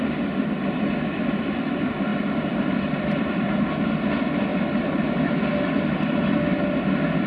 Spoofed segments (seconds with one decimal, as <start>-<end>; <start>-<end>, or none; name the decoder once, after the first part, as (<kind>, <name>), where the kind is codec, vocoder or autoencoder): 2.1-3.6 (vocoder, BigVGAN v2); 4.5-5.3